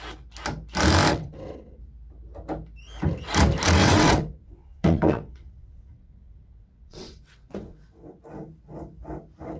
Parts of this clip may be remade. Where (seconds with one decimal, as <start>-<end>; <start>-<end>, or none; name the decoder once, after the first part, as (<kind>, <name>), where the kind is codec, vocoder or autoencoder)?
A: 1.1-1.8 (vocoder, WaveNeXt); 3.8-8.2